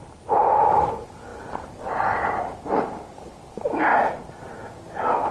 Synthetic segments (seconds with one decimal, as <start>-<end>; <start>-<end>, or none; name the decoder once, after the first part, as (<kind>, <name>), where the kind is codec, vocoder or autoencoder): 0.0-3.9 (vocoder, BigVGAN v2)